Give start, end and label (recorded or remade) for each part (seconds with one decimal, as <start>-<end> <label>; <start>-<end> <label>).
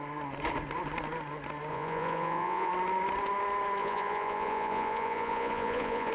0.0-1.7 recorded; 1.7-2.7 remade; 2.7-3.8 recorded; 3.8-6.1 remade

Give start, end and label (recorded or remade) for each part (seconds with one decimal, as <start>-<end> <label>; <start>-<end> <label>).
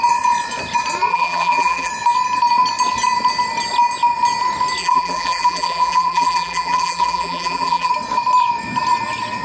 0.0-1.1 recorded; 1.1-1.9 remade; 1.9-4.8 recorded; 4.8-7.9 remade; 7.9-9.4 recorded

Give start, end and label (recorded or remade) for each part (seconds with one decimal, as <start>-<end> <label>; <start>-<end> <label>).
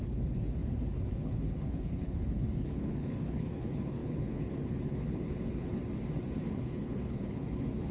0.0-5.8 remade; 5.8-6.4 recorded; 6.4-7.9 remade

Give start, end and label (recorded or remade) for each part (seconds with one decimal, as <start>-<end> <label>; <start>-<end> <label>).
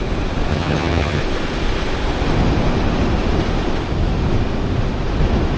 0.0-0.5 recorded; 0.5-1.2 remade; 1.2-5.6 recorded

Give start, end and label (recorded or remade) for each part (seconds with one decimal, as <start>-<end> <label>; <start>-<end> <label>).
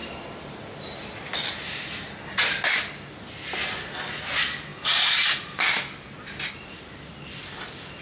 0.0-8.0 recorded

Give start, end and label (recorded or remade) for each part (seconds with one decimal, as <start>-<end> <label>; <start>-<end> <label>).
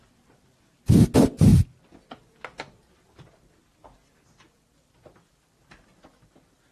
0.0-1.5 recorded; 1.5-2.1 remade; 2.1-6.7 recorded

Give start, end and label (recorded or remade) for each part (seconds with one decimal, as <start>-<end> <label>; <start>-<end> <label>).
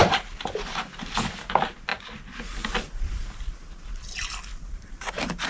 0.0-1.2 remade; 1.2-5.5 recorded